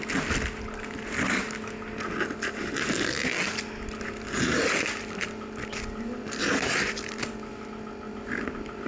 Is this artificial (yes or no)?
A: no